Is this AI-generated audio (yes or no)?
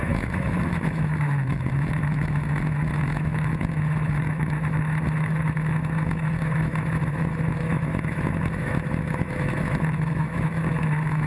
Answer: yes